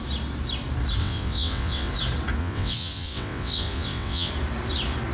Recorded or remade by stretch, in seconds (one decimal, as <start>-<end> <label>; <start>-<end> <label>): 0.0-1.0 recorded; 1.0-1.9 remade; 1.9-2.4 recorded; 2.4-4.3 remade; 4.3-5.1 recorded